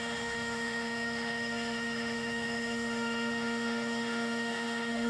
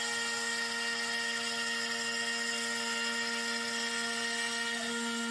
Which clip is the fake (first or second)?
first